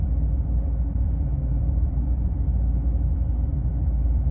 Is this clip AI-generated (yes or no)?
yes